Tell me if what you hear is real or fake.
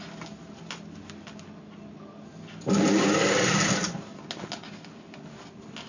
real